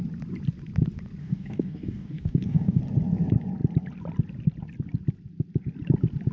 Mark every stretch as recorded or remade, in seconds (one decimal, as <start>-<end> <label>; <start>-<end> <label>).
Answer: 0.0-1.2 recorded; 1.2-2.8 remade; 2.8-6.3 recorded